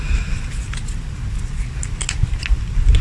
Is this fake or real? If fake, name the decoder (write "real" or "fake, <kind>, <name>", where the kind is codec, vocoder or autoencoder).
real